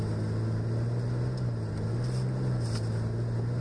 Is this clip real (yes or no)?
yes